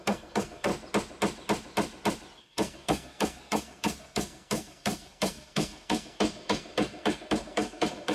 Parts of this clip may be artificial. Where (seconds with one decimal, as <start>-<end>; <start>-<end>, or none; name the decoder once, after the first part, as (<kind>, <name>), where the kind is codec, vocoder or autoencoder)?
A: 0.0-0.7 (codec, SNAC); 2.4-8.1